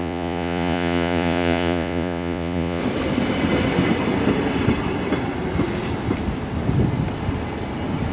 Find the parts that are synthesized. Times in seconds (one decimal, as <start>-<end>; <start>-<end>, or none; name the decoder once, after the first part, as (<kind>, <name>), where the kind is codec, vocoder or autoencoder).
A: 0.0-2.8 (vocoder, Vocos)